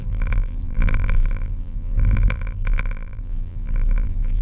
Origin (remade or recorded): remade